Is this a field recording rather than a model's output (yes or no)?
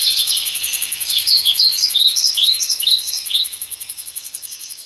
no